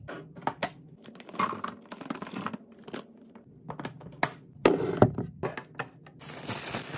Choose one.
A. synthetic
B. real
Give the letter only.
B